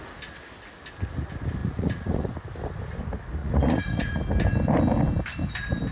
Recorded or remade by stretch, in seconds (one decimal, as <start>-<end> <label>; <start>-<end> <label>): 0.0-1.6 recorded; 1.6-2.3 remade; 2.3-3.4 recorded; 3.4-4.2 remade; 4.2-5.9 recorded